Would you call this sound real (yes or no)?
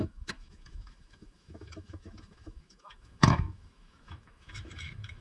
no